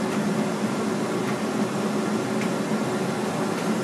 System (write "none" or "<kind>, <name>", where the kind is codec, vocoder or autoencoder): none